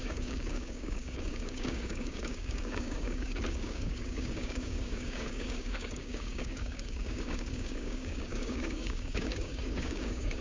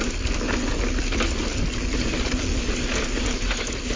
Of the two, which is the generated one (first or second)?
first